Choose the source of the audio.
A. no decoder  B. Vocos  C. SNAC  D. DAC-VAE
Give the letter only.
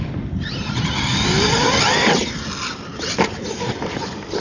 A